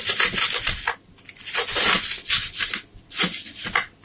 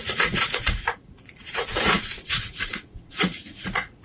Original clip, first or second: first